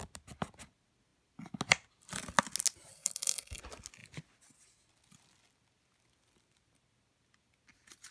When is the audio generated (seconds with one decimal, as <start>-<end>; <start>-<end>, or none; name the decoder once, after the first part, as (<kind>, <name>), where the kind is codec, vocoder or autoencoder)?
2.9-3.6 (codec, SNAC)